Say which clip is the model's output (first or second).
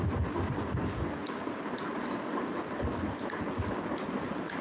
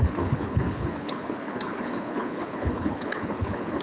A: second